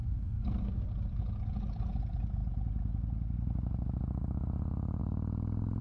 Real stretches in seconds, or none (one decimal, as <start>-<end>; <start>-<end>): 0.8-5.8